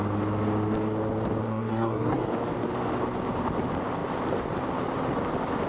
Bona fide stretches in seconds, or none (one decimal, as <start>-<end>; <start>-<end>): 0.0-1.4; 2.3-5.7